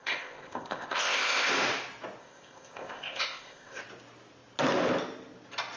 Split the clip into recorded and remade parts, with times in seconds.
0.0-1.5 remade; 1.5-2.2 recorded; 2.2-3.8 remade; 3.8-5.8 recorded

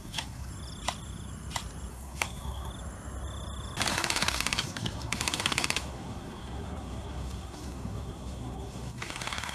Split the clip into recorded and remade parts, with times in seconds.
0.0-0.5 remade; 0.5-1.9 recorded; 1.9-2.7 remade; 2.7-3.9 recorded; 3.9-9.5 remade